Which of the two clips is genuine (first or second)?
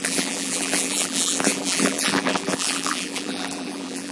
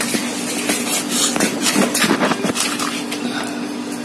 second